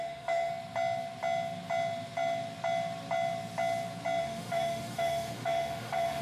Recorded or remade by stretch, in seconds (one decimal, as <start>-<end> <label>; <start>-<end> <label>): 0.0-0.5 remade; 0.5-4.2 recorded; 4.2-6.2 remade